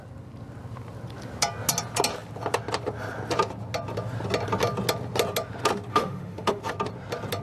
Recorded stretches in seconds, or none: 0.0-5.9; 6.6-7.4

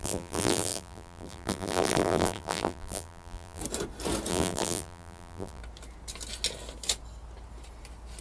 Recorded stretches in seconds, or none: 3.6-4.3; 5.6-8.2

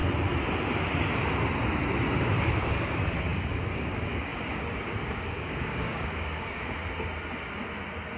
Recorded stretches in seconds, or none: 0.0-2.2; 6.8-8.2

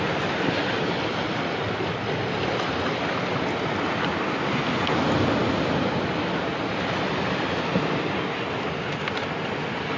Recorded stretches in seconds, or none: 0.0-10.0

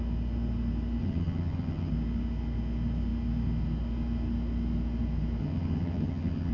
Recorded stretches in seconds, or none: 0.0-1.0; 1.9-5.4